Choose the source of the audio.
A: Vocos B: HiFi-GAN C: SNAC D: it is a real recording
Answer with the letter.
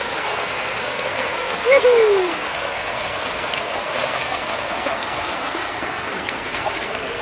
C